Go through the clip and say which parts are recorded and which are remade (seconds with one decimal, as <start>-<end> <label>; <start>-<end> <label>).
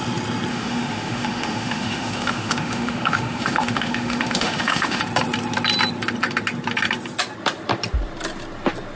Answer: 0.0-0.5 recorded; 0.5-5.0 remade; 5.0-9.0 recorded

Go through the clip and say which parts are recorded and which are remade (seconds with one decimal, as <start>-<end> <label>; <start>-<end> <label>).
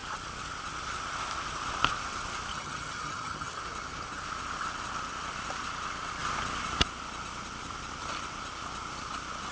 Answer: 0.0-2.5 recorded; 2.5-3.6 remade; 3.6-9.5 recorded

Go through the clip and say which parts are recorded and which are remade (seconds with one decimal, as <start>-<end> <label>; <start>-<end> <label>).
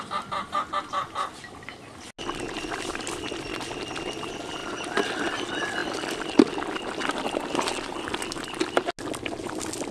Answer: 0.0-9.9 recorded